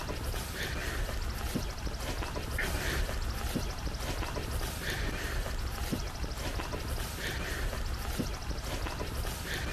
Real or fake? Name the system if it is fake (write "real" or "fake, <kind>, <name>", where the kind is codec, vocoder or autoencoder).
real